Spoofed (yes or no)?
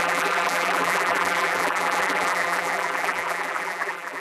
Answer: yes